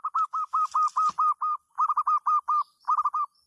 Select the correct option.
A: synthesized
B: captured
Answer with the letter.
B